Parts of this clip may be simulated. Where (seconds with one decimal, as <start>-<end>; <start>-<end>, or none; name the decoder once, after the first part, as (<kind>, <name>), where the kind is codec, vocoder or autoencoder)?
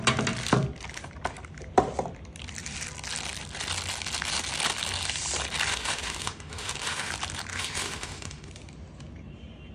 5.7-7.1 (autoencoder, DAC-VAE); 7.5-8.5